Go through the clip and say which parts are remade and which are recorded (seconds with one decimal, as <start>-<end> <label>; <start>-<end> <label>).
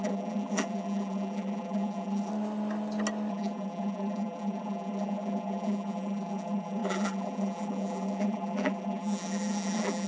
0.0-2.3 remade; 2.3-3.3 recorded; 3.3-10.1 remade